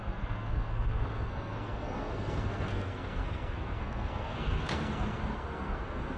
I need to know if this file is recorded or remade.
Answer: remade